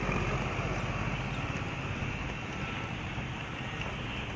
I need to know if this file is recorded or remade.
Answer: recorded